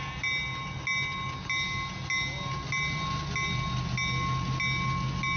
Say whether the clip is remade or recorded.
recorded